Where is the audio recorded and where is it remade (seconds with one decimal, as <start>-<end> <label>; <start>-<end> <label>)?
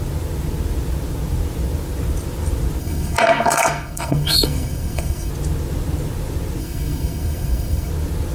0.0-2.8 recorded; 2.8-5.3 remade; 5.3-6.6 recorded; 6.6-7.9 remade; 7.9-8.3 recorded